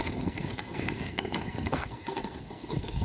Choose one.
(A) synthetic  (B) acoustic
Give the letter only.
A